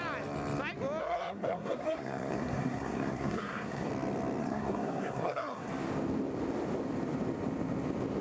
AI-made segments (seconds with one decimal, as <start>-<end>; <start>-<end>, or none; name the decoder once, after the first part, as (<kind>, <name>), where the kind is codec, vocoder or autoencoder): 1.0-3.9 (codec, SNAC); 4.4-5.7

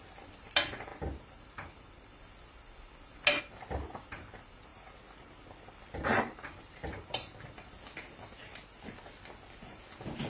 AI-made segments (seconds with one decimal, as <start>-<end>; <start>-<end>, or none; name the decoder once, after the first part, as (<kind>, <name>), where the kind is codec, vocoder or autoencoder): none

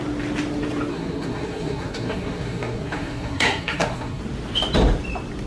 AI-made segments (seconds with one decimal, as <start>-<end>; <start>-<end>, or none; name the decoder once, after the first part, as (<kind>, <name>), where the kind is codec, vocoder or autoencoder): 0.9-4.2 (codec, SNAC)